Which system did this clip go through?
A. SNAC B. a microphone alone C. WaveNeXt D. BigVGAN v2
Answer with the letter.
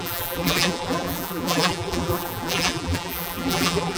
D